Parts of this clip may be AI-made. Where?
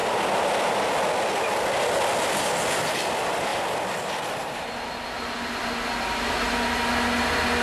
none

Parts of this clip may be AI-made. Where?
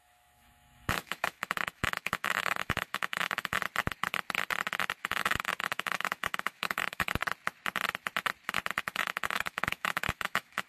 0.0-3.6 (autoencoder, DAC-VAE); 5.0-7.2; 8.8-10.7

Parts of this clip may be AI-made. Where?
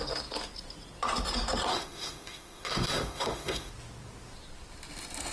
1.7-3.7 (autoencoder, DAC-VAE)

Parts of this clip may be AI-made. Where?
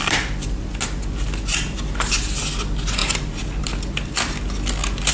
none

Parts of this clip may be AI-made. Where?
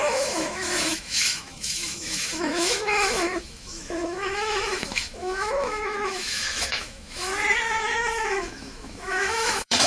0.0-7.3 (autoencoder, DAC-VAE); 7.8-9.9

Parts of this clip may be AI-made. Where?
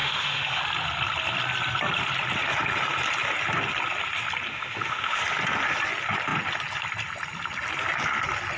0.0-0.6 (autoencoder, DAC-VAE); 4.5-5.2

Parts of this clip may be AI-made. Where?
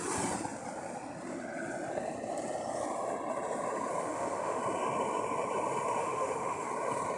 4.0-4.6 (autoencoder, DAC-VAE); 6.0-6.7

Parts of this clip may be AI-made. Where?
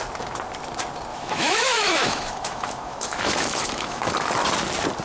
1.1-4.1 (autoencoder, DAC-VAE)